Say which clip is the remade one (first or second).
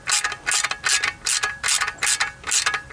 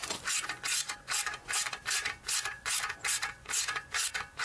second